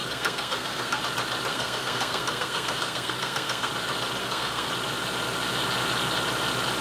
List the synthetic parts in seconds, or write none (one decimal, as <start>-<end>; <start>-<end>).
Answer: 0.0-1.0; 1.5-3.7; 4.2-4.7

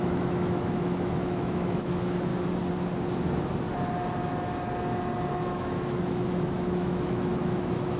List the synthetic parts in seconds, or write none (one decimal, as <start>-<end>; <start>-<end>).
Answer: 0.0-2.3; 5.3-8.0

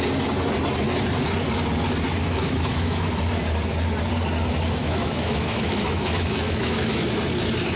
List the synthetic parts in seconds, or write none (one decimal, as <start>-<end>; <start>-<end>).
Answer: 2.2-3.1; 4.8-7.0

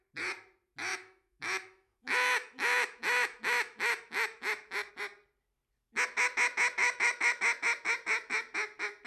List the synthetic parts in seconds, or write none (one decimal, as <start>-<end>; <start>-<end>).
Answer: 0.9-4.9; 6.8-7.4

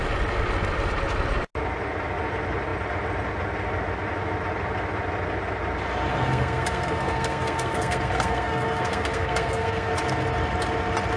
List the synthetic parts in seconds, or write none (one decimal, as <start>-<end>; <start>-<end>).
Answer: 6.1-9.9